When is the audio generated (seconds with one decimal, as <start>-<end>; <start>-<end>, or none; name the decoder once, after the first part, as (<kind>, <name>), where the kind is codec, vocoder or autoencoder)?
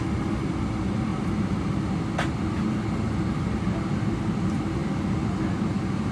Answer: 1.1-1.8 (vocoder, BigVGAN v2)